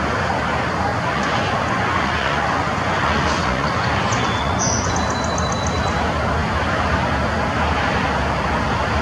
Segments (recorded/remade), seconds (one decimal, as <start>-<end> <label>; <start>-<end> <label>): 0.0-0.9 recorded; 0.9-4.9 remade; 4.9-9.0 recorded